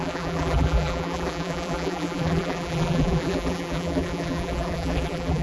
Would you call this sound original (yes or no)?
no